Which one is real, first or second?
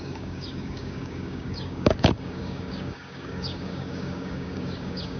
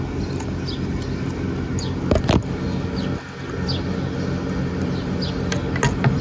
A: second